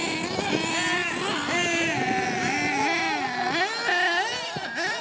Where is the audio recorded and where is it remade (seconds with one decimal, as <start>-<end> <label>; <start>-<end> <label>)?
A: 0.0-5.0 recorded